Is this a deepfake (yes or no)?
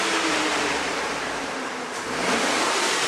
yes